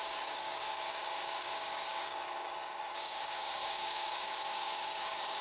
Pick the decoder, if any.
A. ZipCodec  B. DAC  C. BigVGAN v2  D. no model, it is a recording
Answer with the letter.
B